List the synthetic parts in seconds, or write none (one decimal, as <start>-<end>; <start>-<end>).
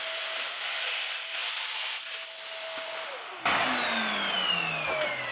none